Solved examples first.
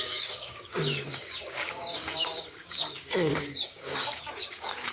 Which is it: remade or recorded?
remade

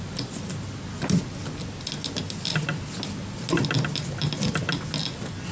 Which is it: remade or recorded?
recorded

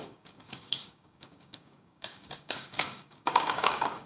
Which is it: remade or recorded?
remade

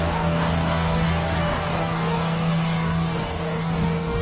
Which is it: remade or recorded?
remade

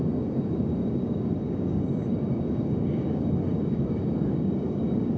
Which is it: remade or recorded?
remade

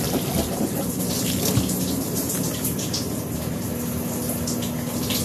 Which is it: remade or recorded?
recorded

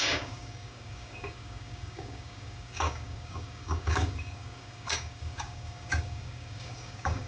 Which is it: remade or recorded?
remade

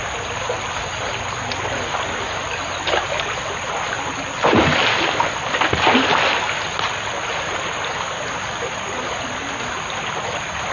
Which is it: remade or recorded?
recorded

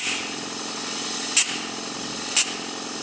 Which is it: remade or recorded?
recorded